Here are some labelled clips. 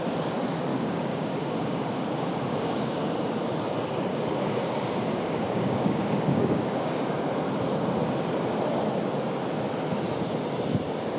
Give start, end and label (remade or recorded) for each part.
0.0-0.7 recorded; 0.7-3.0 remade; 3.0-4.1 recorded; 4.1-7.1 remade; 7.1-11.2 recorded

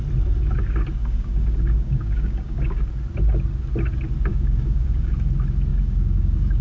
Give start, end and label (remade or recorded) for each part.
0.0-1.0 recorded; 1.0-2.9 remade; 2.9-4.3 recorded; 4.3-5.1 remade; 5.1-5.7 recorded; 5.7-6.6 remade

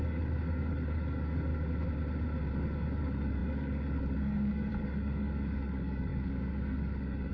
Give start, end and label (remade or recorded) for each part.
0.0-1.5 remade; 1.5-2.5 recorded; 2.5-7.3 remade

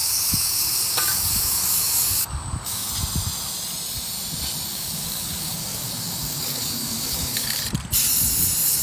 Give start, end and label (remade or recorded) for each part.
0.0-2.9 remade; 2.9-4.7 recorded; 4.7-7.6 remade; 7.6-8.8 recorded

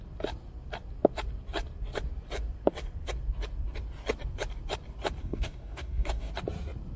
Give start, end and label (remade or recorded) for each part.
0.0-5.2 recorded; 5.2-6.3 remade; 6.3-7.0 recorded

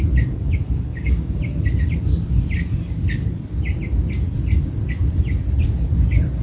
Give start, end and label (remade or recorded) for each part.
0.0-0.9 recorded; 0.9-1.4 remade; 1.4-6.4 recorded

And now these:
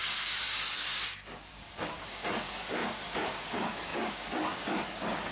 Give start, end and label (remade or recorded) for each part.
0.0-5.3 remade